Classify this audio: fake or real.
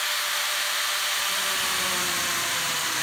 fake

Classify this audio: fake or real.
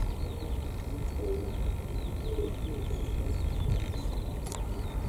real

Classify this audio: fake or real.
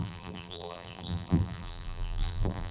fake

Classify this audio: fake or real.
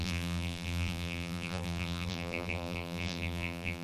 fake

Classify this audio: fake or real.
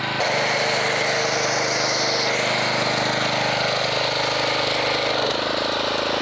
real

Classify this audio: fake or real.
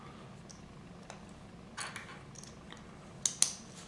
real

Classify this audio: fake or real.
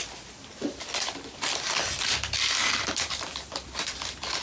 fake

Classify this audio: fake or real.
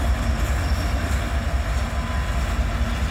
real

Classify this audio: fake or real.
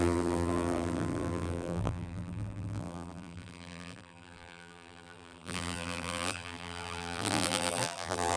fake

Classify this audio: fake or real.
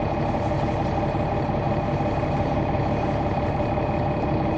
fake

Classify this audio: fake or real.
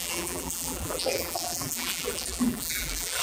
fake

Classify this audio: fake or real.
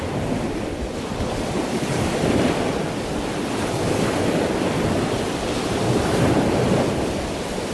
fake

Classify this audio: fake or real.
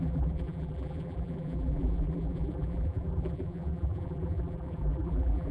fake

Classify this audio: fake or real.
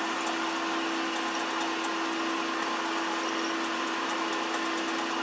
real